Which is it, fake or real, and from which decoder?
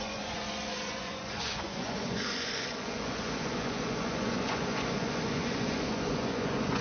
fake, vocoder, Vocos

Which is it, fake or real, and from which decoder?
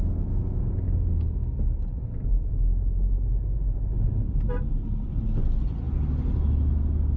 real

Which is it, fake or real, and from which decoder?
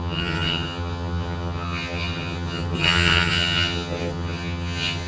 fake, vocoder, HiFi-GAN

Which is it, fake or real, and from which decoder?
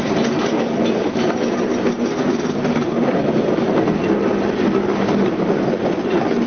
real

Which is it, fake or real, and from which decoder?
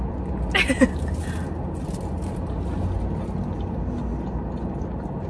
real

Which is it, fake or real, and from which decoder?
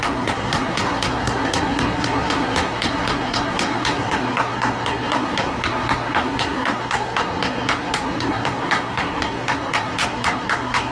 fake, codec, SNAC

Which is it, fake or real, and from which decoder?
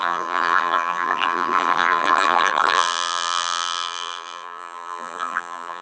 fake, vocoder, BigVGAN v2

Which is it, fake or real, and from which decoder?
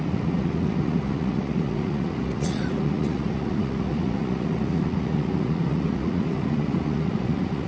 fake, vocoder, Vocos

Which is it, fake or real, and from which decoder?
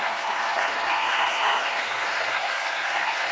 fake, codec, SNAC